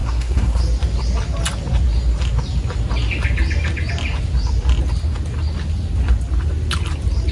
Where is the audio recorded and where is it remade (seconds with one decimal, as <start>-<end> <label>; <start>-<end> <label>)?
0.0-0.6 remade; 0.6-7.3 recorded